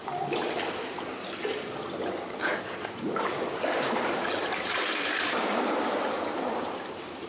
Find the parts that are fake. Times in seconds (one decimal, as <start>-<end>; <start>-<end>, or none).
4.4-7.3